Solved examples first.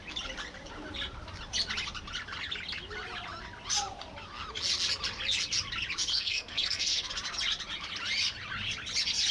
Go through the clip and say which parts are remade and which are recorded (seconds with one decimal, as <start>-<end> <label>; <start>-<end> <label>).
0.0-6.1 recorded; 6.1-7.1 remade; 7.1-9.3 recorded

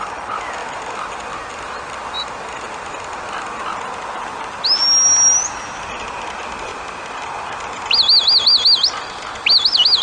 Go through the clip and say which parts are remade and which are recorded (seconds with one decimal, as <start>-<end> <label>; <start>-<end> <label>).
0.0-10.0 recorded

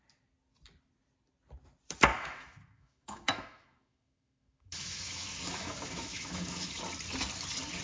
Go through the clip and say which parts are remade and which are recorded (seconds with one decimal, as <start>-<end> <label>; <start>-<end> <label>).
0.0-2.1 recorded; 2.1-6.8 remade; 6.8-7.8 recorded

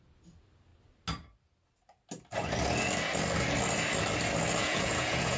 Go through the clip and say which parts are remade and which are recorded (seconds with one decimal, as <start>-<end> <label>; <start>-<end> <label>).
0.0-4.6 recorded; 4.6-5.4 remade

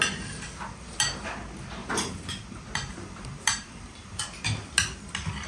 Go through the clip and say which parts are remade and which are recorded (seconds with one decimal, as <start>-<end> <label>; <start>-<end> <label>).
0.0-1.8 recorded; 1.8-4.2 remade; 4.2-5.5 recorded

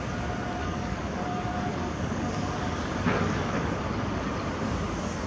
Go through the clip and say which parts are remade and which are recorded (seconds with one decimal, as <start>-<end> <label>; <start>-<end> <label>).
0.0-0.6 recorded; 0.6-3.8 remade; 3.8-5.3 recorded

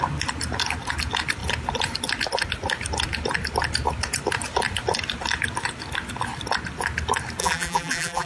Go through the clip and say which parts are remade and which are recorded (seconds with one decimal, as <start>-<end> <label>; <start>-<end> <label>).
0.0-7.4 recorded; 7.4-8.3 remade

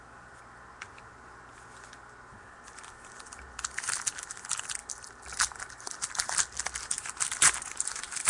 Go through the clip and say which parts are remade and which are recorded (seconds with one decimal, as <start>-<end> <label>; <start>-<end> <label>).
0.0-4.8 recorded; 4.8-6.8 remade; 6.8-8.3 recorded